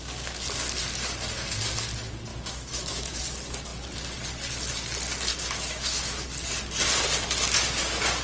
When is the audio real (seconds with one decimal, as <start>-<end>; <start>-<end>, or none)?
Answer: 0.0-2.3; 3.2-5.3; 6.2-8.2